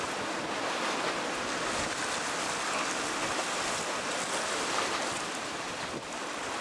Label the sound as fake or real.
real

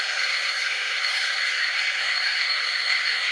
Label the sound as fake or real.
fake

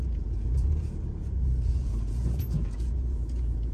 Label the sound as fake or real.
fake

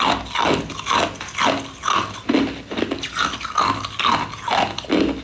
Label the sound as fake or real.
real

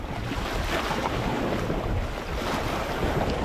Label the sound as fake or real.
real